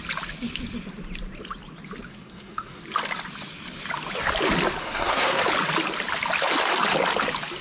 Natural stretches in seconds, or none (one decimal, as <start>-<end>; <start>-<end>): 0.0-2.1; 2.8-4.8; 5.4-7.6